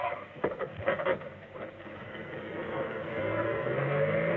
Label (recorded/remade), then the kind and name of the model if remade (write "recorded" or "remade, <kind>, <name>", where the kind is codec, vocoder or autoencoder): remade, codec, SNAC